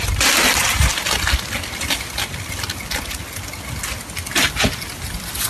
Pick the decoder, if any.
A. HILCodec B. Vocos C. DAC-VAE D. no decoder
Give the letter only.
D